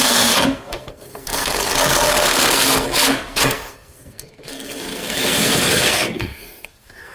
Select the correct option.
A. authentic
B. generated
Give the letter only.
B